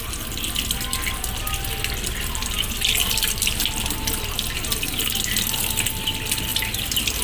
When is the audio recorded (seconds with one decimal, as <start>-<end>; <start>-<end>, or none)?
0.0-7.2